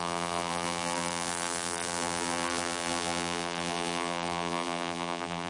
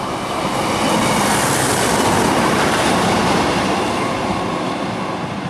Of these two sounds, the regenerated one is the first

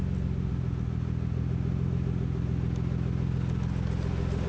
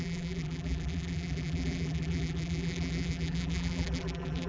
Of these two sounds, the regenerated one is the second